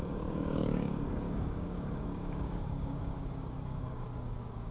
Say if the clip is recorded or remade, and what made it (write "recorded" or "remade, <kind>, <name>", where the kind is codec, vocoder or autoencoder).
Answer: remade, codec, DAC